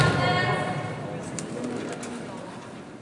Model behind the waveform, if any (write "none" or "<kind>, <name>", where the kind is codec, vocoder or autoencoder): none